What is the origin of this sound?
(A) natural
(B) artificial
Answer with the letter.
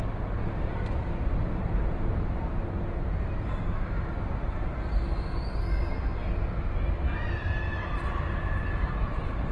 A